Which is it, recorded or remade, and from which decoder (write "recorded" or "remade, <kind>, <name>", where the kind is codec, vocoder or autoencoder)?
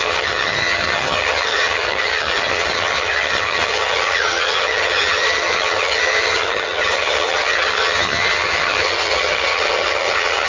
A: remade, vocoder, HiFi-GAN